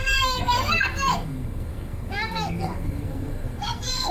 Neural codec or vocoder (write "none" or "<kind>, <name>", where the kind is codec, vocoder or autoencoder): codec, SNAC